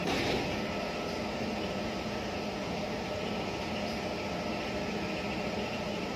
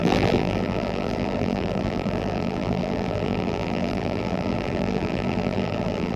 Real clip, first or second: first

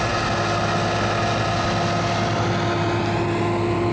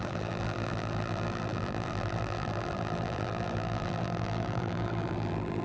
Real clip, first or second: first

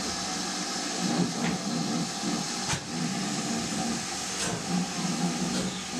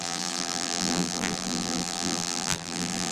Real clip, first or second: first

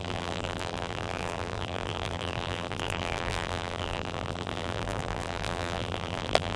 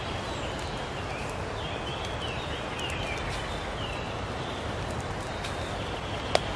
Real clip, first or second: second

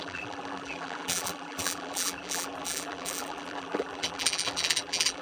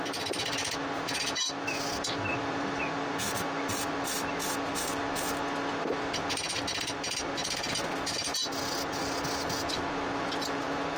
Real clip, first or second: second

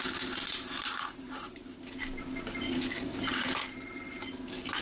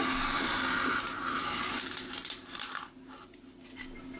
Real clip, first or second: second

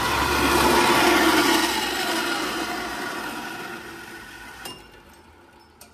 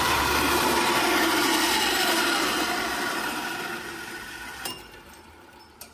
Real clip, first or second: first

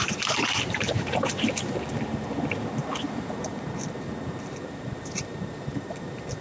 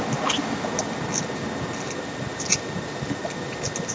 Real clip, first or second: second